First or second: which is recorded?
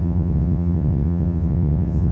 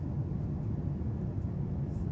second